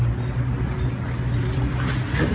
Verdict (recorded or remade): recorded